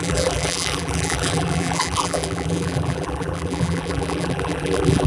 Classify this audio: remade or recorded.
remade